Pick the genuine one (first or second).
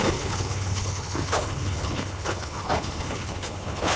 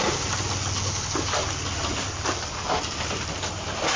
second